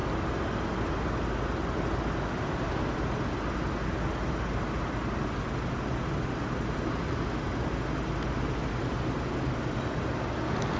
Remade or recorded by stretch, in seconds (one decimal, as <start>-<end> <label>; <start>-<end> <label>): 0.0-10.8 recorded